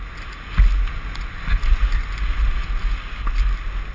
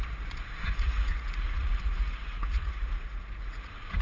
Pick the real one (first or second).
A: first